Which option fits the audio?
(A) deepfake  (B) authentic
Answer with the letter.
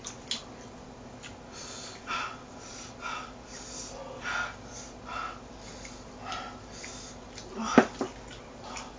B